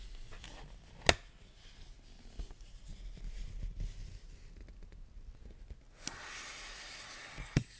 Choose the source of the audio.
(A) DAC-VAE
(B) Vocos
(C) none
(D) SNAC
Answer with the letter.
C